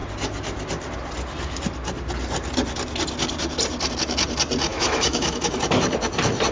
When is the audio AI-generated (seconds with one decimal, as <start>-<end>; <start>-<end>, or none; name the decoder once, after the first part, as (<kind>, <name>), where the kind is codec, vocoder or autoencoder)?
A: 4.7-5.5 (autoencoder, DAC-VAE)